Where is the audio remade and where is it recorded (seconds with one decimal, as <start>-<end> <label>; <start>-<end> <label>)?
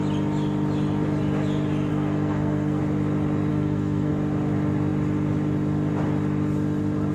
0.0-1.9 recorded; 1.9-2.8 remade; 2.8-3.5 recorded; 3.5-4.1 remade; 4.1-7.1 recorded